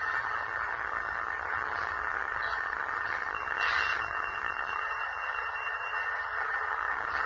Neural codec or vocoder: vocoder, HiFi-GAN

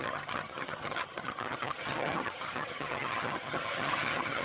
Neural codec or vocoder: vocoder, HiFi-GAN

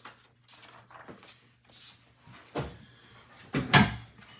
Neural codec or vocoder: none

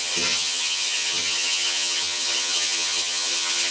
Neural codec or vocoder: vocoder, HiFi-GAN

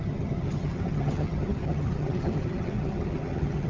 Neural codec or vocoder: vocoder, HiFi-GAN